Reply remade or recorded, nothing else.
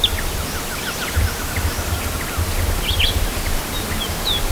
recorded